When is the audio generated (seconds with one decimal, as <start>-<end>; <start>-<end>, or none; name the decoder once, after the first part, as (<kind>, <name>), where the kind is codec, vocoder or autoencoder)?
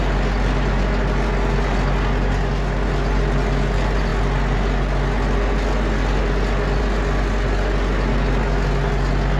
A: none